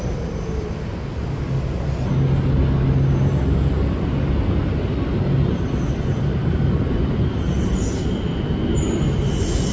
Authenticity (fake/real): real